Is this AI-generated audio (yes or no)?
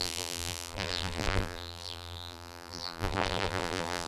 yes